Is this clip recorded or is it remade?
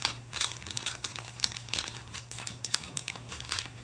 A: remade